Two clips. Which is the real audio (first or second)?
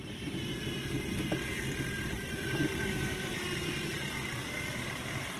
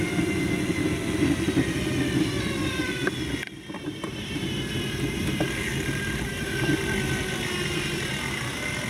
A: second